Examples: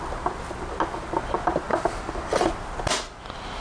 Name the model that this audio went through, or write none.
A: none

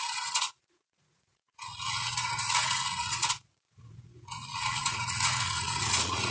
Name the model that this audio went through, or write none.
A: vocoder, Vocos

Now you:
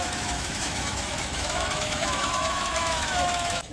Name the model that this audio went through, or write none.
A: autoencoder, DAC-VAE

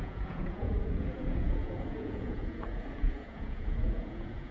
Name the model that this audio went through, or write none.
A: vocoder, Vocos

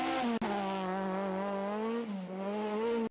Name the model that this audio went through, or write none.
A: none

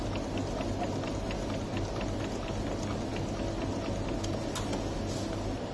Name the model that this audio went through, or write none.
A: none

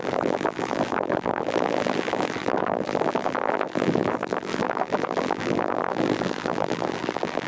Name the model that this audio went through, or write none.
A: vocoder, BigVGAN v2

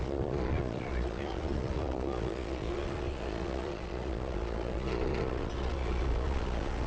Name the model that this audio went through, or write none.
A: vocoder, Vocos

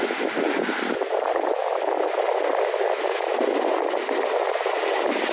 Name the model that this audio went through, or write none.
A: none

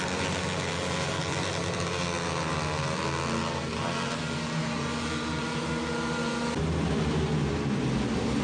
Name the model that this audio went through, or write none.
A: none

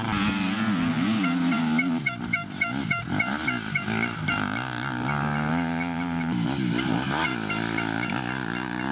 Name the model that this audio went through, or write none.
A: none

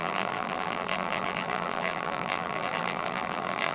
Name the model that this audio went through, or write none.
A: vocoder, BigVGAN v2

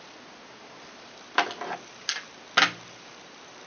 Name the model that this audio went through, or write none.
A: none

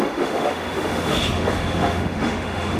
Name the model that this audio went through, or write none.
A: autoencoder, DAC-VAE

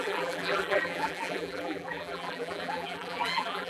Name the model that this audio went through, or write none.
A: vocoder, BigVGAN v2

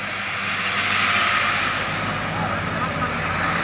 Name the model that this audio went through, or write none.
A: none